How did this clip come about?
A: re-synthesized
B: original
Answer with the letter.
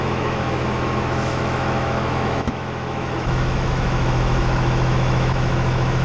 A